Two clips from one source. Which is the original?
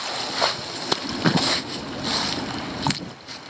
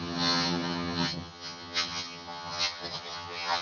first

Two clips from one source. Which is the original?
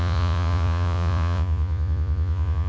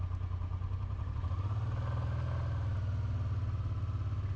second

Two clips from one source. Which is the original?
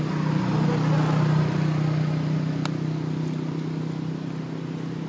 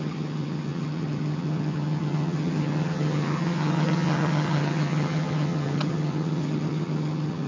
first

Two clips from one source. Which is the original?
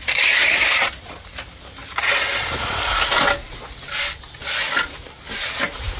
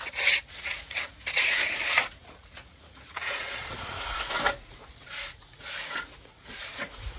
first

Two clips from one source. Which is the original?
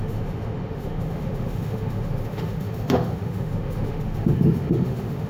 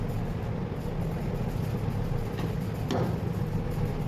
second